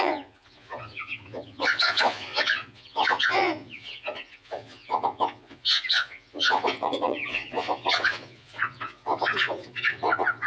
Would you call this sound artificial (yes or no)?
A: yes